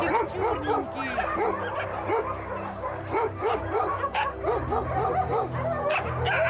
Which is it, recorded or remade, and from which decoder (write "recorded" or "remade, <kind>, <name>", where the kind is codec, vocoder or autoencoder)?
recorded